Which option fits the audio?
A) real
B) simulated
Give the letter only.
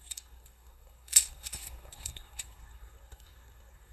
B